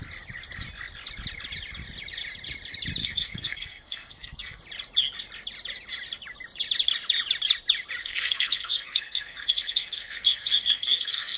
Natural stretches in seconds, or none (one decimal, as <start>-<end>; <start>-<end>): 0.0-3.0; 4.6-8.0